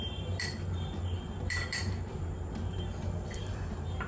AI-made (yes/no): yes